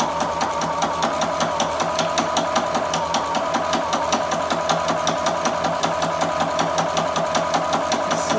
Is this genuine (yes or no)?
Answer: yes